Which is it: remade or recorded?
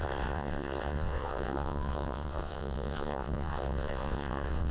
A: remade